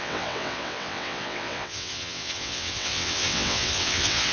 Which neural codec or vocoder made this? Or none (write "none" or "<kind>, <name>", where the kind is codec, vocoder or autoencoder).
vocoder, WaveNeXt